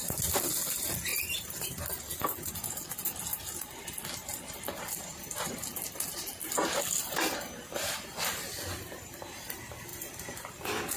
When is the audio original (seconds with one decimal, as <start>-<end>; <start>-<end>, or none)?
0.0-9.9; 10.6-11.0